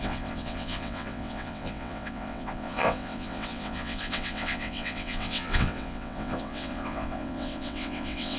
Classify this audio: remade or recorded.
remade